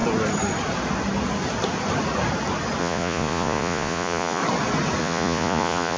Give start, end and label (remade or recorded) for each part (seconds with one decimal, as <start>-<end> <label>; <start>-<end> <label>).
0.0-2.8 recorded; 2.8-4.4 remade; 4.4-5.0 recorded; 5.0-6.0 remade

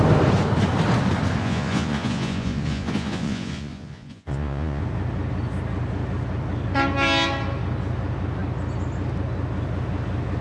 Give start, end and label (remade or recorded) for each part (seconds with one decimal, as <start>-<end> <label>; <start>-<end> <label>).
0.0-1.4 recorded; 1.4-4.8 remade; 4.8-10.4 recorded